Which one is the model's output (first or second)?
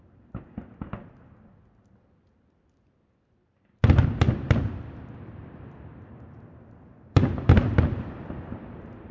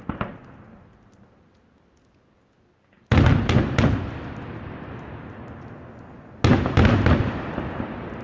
first